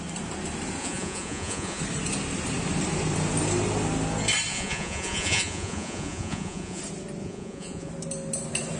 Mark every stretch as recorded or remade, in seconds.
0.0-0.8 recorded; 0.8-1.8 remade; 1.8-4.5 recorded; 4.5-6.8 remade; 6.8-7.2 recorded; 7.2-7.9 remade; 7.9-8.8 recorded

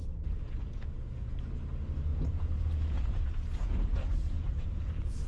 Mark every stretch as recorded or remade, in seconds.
0.0-1.4 remade; 1.4-2.1 recorded; 2.1-5.3 remade

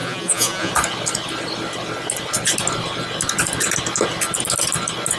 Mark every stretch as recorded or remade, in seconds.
0.0-0.7 remade; 0.7-5.2 recorded

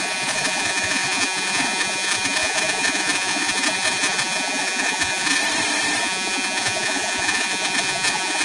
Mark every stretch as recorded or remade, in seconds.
0.0-5.4 remade; 5.4-6.0 recorded; 6.0-8.4 remade

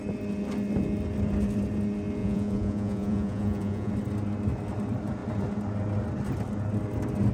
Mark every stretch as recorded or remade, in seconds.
0.0-2.2 recorded; 2.2-3.9 remade; 3.9-7.3 recorded

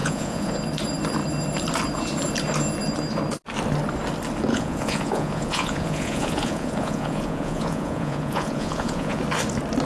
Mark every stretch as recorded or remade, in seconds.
0.0-0.5 remade; 0.5-4.5 recorded; 4.5-9.2 remade; 9.2-9.9 recorded